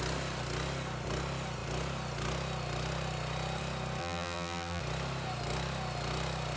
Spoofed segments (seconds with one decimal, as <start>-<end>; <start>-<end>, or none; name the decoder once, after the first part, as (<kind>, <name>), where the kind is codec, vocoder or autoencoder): 4.0-4.8 (vocoder, BigVGAN v2)

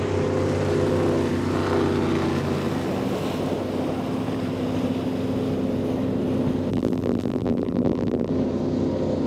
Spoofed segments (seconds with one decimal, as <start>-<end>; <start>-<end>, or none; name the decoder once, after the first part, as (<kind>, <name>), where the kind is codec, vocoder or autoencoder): 6.7-8.3 (vocoder, BigVGAN v2)

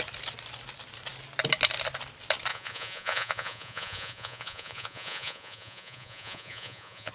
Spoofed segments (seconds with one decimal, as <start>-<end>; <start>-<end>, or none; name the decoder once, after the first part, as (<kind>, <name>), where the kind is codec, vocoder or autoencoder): 2.5-7.1 (vocoder, Vocos)

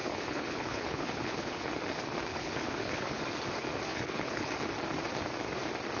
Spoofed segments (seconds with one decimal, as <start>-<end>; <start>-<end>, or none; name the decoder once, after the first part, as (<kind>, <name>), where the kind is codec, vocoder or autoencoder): 0.0-1.7 (codec, HILCodec); 2.3-3.2; 3.9-4.5

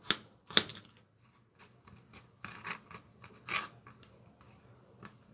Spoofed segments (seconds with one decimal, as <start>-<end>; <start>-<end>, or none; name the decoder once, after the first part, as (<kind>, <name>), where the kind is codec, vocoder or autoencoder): none